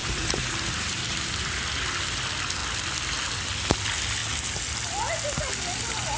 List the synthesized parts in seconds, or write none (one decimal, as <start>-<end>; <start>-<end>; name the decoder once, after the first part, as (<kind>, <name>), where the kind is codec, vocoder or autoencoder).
0.0-1.6 (vocoder, BigVGAN v2)